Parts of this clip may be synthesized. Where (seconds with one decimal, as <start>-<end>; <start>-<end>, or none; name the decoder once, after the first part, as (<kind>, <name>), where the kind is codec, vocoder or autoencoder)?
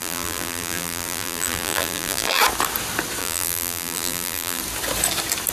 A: 0.0-2.4 (vocoder, BigVGAN v2); 3.2-4.6